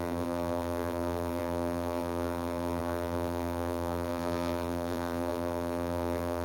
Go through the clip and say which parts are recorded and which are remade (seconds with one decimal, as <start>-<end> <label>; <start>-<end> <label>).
0.0-6.4 remade